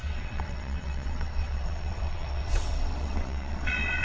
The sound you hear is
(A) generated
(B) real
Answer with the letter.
A